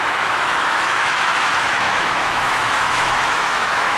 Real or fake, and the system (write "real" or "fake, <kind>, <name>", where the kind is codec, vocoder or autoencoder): fake, autoencoder, DAC-VAE